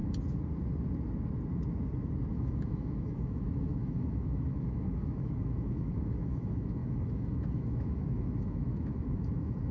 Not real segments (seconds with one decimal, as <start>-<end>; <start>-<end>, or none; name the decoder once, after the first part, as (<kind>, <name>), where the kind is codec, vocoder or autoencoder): 2.3-9.7 (autoencoder, DAC-VAE)